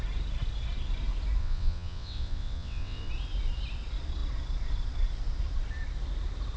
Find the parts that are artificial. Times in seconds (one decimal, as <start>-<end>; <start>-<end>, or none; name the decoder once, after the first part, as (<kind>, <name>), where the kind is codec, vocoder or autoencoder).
1.4-3.1 (vocoder, WaveNeXt)